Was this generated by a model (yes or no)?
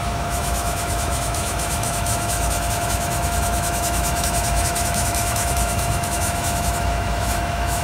yes